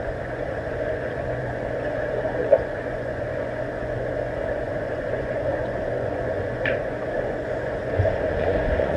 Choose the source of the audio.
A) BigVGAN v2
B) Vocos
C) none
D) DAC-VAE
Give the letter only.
B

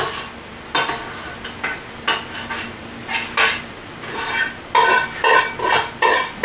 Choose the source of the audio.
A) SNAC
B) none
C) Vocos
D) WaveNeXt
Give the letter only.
B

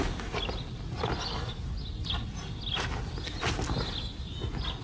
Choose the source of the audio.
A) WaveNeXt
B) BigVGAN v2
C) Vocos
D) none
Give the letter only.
D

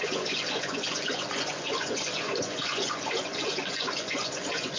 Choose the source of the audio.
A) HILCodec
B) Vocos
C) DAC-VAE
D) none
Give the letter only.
B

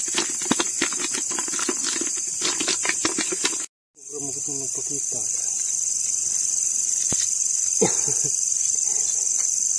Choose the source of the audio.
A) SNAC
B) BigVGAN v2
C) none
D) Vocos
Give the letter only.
C